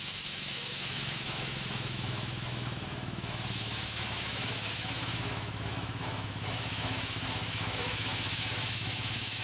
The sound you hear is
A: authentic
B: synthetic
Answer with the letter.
B